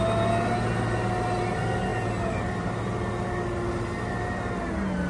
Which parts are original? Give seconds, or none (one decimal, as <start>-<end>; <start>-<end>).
0.0-5.1